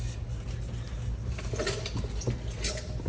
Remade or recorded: recorded